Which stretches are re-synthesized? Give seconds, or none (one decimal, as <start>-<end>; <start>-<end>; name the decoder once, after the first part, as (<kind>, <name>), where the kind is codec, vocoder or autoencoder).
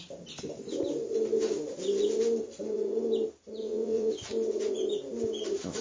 3.6-4.1 (vocoder, WaveNeXt)